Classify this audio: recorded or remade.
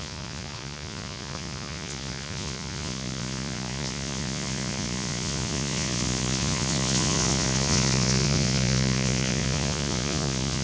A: remade